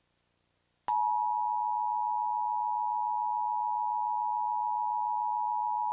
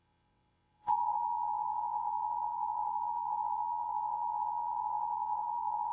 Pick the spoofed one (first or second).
second